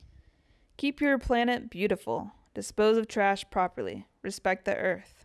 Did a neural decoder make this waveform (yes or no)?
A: no